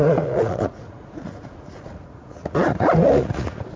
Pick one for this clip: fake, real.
fake